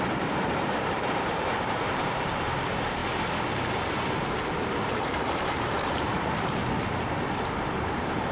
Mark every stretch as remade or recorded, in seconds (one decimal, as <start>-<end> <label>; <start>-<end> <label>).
0.0-3.0 remade; 3.0-4.9 recorded; 4.9-6.6 remade; 6.6-7.7 recorded; 7.7-8.3 remade